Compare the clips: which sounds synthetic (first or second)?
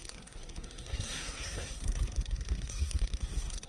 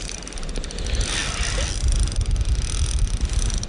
first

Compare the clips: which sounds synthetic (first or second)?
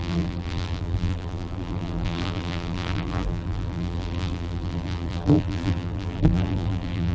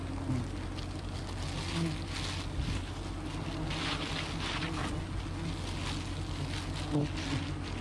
first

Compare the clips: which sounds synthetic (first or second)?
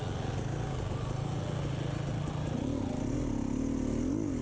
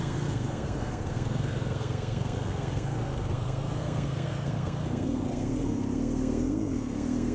second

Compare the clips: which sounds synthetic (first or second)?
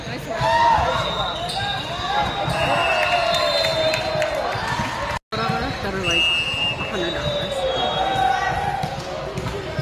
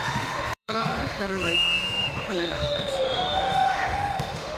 second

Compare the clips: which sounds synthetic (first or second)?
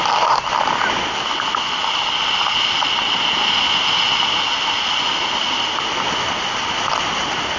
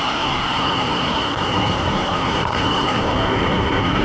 second